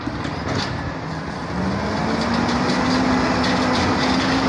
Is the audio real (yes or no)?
yes